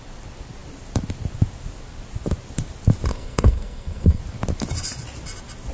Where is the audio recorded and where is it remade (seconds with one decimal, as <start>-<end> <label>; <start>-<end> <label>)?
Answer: 0.0-3.1 recorded; 3.1-4.2 remade; 4.2-5.7 recorded